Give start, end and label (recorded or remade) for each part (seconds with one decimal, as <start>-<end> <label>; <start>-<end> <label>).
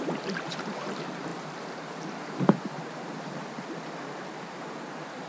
0.0-5.3 recorded